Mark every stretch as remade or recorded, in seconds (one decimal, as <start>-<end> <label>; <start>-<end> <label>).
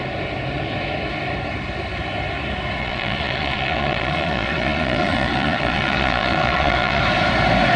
0.0-2.8 recorded; 2.8-7.0 remade; 7.0-7.8 recorded